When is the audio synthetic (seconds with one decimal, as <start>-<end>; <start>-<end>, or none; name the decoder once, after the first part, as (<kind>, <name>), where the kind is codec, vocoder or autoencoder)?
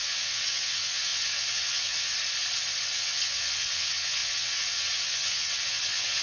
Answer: 0.0-2.1 (vocoder, WaveNeXt); 2.8-6.2